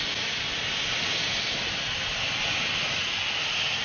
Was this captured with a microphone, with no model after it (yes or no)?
yes